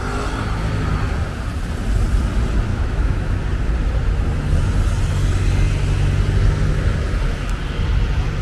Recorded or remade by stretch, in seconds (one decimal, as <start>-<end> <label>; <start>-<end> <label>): 0.0-2.7 recorded; 2.7-3.4 remade; 3.4-8.4 recorded